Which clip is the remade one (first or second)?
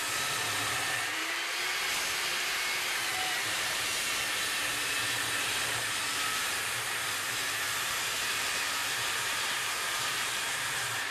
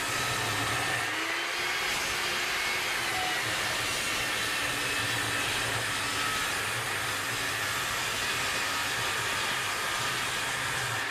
first